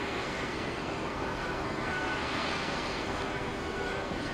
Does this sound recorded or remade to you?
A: remade